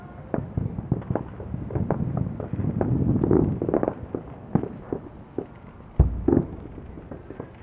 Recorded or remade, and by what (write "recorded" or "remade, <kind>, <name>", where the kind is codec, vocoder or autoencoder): recorded